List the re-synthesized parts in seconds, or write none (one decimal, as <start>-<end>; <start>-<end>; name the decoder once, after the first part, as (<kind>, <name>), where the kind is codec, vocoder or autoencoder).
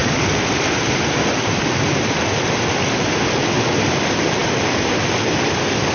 0.0-5.9 (vocoder, BigVGAN v2)